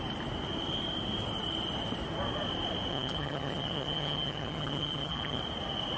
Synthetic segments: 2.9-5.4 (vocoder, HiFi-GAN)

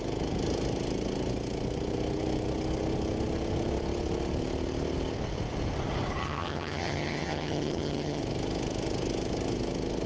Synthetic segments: 6.2-8.2 (vocoder, HiFi-GAN)